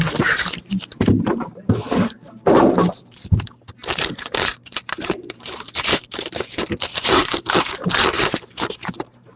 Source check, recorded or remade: remade